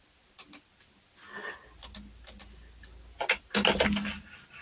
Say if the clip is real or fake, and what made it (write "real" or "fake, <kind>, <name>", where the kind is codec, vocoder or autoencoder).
real